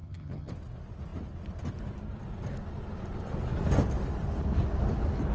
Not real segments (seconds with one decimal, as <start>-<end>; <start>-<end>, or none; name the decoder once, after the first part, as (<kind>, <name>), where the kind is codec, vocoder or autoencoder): 0.0-0.5 (vocoder, HiFi-GAN)